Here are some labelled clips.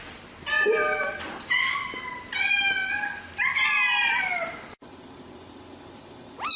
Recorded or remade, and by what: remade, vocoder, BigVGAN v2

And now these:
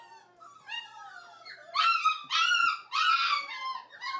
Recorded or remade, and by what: recorded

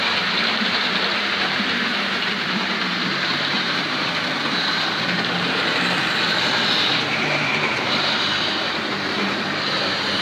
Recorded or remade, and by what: remade, vocoder, BigVGAN v2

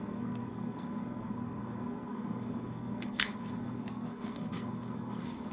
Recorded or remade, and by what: remade, codec, SNAC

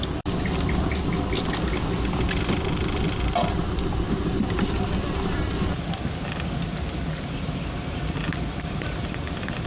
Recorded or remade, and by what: recorded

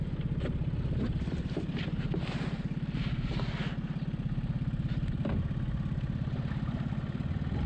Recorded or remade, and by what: recorded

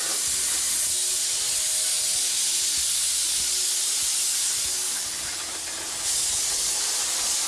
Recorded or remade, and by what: recorded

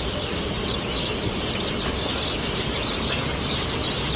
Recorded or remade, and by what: recorded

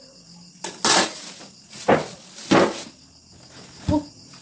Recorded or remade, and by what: recorded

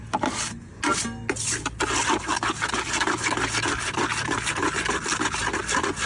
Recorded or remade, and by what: recorded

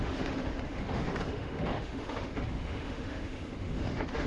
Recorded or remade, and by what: remade, autoencoder, DAC-VAE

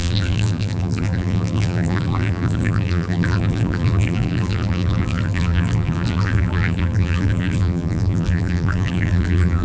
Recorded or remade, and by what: remade, vocoder, BigVGAN v2